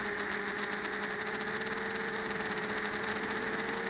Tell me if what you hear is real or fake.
real